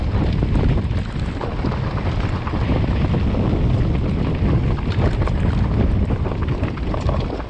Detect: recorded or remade recorded